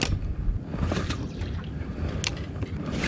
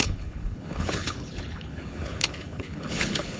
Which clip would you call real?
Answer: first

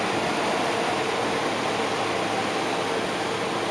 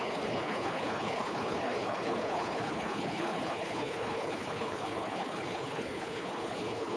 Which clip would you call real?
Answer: first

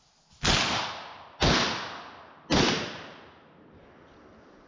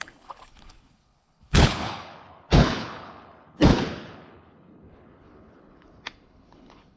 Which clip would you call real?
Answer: first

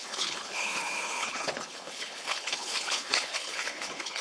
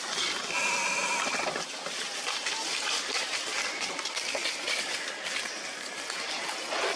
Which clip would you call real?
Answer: second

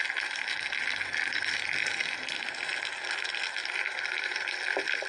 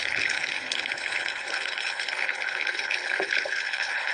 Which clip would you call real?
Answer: first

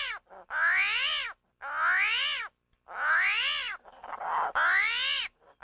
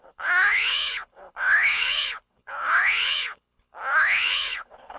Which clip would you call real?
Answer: first